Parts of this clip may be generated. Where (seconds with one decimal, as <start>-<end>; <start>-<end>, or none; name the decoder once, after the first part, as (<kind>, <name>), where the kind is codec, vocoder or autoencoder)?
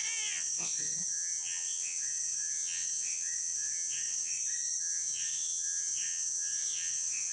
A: 0.0-4.3 (vocoder, WaveNeXt); 4.8-7.3